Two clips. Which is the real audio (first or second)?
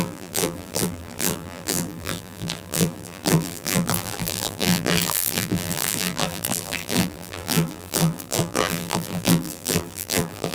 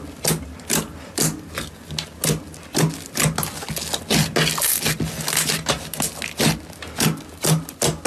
second